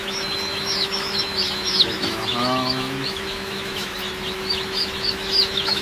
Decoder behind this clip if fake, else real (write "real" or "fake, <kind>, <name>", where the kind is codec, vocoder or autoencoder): fake, autoencoder, DAC-VAE